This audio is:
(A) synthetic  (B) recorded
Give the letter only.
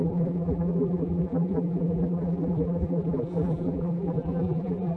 A